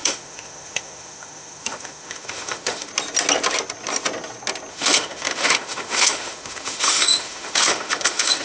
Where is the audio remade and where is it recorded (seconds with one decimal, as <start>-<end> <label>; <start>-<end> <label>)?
0.0-2.9 remade; 2.9-4.7 recorded; 4.7-8.4 remade